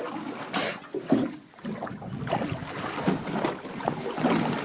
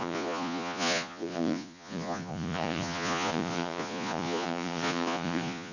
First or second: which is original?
first